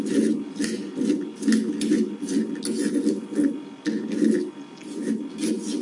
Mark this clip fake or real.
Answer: real